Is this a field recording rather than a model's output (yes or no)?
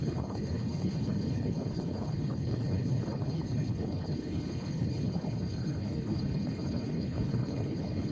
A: no